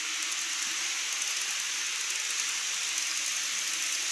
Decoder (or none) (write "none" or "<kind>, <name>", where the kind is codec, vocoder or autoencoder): none